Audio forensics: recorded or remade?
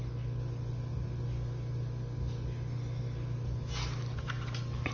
recorded